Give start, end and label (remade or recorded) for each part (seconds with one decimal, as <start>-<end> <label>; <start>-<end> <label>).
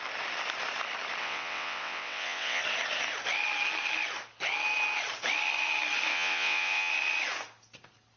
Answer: 0.0-1.2 recorded; 1.2-2.6 remade; 2.6-6.1 recorded; 6.1-6.9 remade; 6.9-8.2 recorded